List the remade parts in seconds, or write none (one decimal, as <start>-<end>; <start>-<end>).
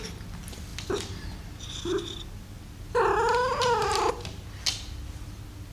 none